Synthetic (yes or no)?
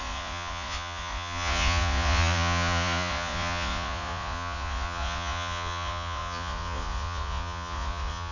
yes